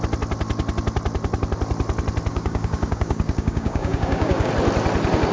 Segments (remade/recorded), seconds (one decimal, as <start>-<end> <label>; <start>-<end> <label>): 0.0-2.3 recorded; 2.3-4.5 remade; 4.5-5.3 recorded